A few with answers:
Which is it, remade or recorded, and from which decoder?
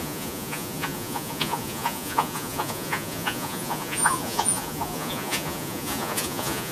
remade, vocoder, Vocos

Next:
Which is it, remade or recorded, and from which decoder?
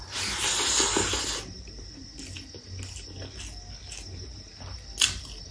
recorded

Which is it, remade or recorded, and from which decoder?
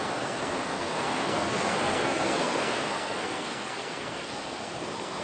remade, codec, SNAC